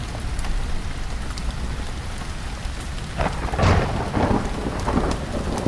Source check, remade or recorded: recorded